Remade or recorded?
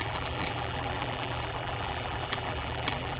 remade